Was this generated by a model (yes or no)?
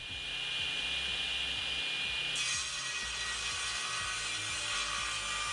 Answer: no